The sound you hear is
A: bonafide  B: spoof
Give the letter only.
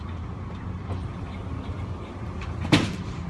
B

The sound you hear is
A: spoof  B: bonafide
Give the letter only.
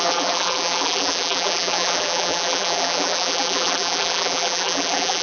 A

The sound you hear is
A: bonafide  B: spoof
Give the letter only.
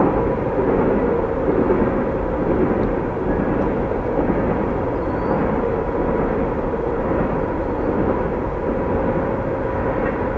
A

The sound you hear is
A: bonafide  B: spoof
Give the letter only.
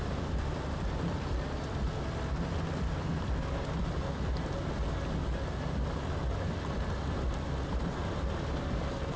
A